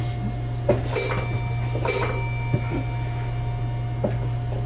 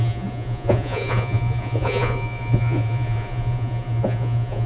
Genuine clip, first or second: first